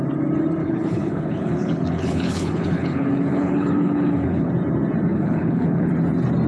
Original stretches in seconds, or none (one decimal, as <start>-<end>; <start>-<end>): 0.0-0.6; 4.5-5.1; 5.9-6.5